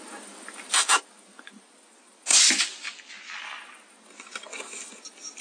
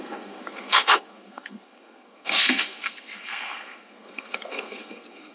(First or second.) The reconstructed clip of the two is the second